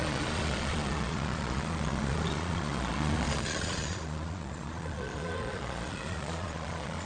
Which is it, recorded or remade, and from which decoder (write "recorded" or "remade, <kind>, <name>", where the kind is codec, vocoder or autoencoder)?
remade, vocoder, Vocos